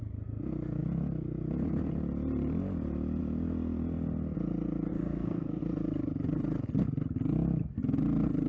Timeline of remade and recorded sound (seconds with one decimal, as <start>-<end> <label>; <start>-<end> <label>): 0.0-4.9 recorded; 4.9-5.6 remade; 5.6-8.5 recorded